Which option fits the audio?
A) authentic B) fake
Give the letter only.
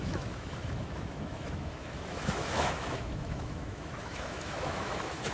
B